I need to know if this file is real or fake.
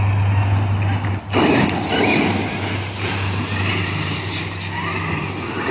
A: real